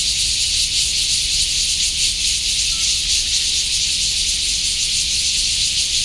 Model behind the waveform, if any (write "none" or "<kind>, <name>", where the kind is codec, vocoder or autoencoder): none